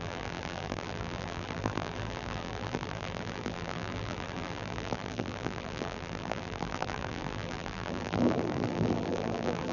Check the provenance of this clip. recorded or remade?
remade